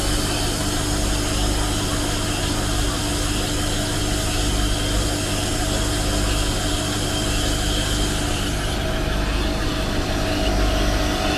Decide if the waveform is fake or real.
real